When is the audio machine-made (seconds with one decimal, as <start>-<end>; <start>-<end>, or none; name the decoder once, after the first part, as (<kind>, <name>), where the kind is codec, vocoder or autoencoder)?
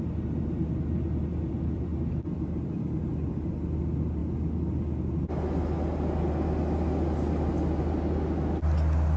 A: none